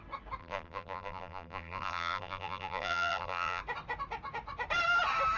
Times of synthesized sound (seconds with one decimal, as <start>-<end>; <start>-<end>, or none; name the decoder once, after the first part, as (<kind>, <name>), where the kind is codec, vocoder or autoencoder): 0.4-3.6 (vocoder, BigVGAN v2)